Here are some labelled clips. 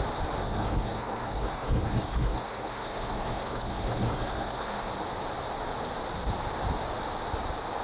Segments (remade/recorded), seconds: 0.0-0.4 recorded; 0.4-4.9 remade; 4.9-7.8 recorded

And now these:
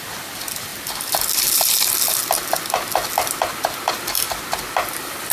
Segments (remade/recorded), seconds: 0.0-5.3 recorded

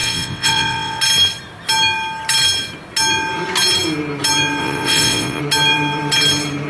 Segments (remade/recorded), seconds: 0.0-1.0 remade; 1.0-4.6 recorded; 4.6-5.4 remade; 5.4-6.7 recorded

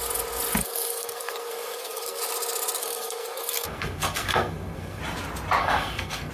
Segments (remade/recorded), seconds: 0.0-0.6 recorded; 0.6-2.2 remade; 2.2-2.8 recorded; 2.8-5.0 remade; 5.0-5.6 recorded; 5.6-6.3 remade

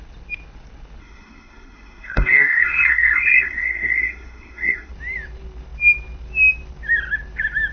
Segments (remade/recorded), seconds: 0.0-1.0 recorded; 1.0-4.9 remade; 4.9-7.7 recorded

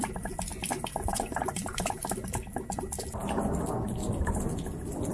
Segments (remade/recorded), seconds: 0.0-1.1 recorded; 1.1-1.8 remade; 1.8-5.1 recorded

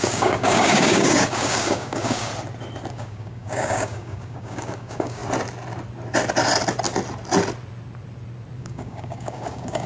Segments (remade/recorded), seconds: 0.0-2.3 remade; 2.3-2.9 recorded; 2.9-5.2 remade; 5.2-8.6 recorded; 8.6-9.9 remade

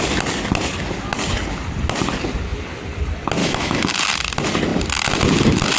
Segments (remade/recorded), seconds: 0.0-3.4 recorded; 3.4-4.0 remade; 4.0-5.8 recorded